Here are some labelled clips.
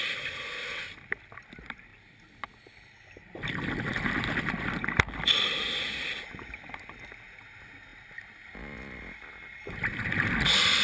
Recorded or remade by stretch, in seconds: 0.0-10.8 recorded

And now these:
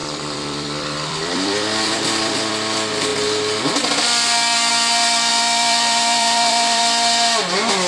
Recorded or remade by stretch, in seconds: 0.0-2.5 remade; 2.5-5.3 recorded; 5.3-6.8 remade; 6.8-7.9 recorded

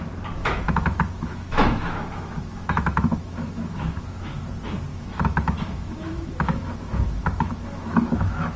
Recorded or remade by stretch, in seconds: 0.0-0.4 recorded; 0.4-4.5 remade; 4.5-4.9 recorded; 4.9-8.6 remade

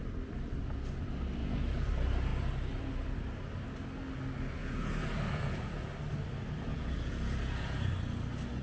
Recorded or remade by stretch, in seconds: 0.0-1.4 recorded; 1.4-1.9 remade; 1.9-4.6 recorded; 4.6-5.9 remade; 5.9-6.7 recorded; 6.7-7.9 remade; 7.9-8.6 recorded

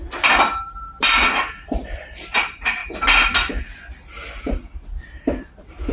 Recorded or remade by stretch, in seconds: 0.0-5.9 recorded

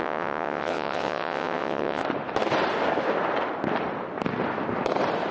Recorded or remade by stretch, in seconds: 0.0-2.0 remade; 2.0-5.3 recorded

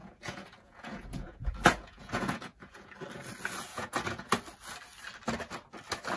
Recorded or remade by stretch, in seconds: 0.0-2.9 remade; 2.9-3.7 recorded; 3.7-4.3 remade; 4.3-6.2 recorded